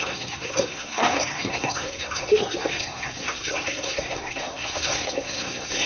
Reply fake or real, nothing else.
fake